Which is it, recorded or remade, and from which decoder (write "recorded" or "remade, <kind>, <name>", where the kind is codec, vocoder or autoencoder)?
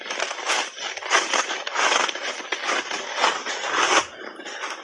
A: remade, vocoder, BigVGAN v2